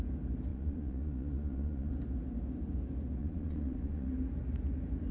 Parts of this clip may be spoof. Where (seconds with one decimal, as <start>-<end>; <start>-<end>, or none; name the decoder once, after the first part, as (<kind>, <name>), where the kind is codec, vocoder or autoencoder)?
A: 0.5-1.9 (vocoder, Vocos); 3.2-4.1